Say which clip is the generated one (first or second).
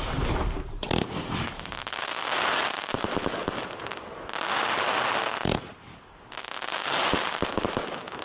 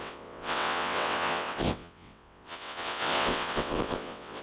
second